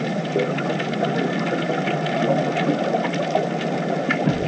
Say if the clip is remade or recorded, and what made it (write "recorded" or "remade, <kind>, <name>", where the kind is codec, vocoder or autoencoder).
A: recorded